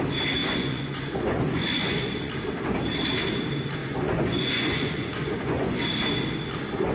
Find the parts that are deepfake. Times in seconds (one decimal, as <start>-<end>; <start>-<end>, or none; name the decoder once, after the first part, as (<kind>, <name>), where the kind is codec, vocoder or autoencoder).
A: 0.4-2.3 (vocoder, Vocos); 3.8-5.8